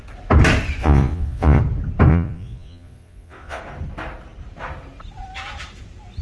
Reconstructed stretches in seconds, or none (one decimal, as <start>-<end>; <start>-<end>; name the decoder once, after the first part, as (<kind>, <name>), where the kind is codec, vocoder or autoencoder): 0.8-1.6 (vocoder, Vocos); 2.1-3.6